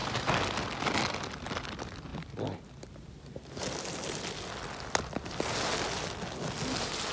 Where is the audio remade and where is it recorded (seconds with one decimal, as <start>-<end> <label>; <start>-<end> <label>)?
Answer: 0.0-7.1 recorded